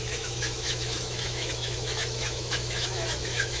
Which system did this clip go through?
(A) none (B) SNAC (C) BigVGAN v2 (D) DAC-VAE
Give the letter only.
D